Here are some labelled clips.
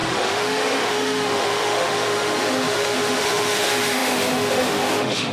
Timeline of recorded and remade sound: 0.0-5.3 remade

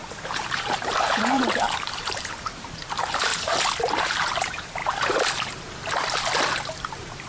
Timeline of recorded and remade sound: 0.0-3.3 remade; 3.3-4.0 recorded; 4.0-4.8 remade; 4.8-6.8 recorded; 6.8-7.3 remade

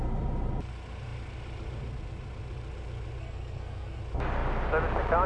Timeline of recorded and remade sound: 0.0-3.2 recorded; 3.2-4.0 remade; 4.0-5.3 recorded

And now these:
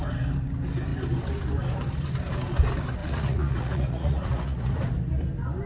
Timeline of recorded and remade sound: 0.0-3.0 recorded; 3.0-4.7 remade; 4.7-5.7 recorded

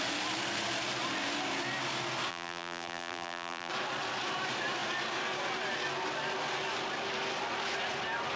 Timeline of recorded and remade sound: 0.0-2.3 recorded; 2.3-3.7 remade; 3.7-8.4 recorded

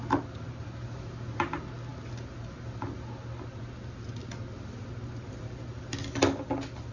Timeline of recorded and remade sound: 0.0-6.9 recorded

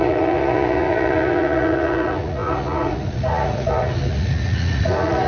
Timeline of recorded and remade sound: 0.0-5.3 remade

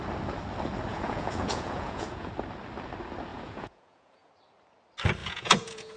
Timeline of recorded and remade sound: 0.0-0.9 recorded; 0.9-2.3 remade; 2.3-3.3 recorded; 3.3-4.3 remade; 4.3-5.2 recorded; 5.2-6.0 remade